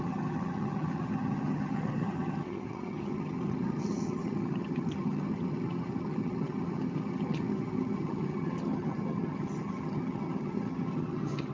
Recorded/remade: remade